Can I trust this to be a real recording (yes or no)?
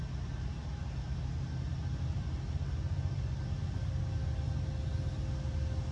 yes